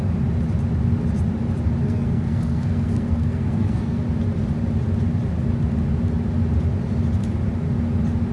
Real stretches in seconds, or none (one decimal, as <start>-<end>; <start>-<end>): 0.0-1.8; 4.0-8.3